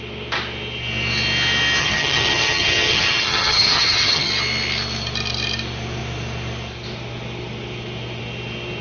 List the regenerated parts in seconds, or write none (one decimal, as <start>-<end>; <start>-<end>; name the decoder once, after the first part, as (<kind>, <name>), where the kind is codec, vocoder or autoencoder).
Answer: 1.8-4.3 (vocoder, HiFi-GAN)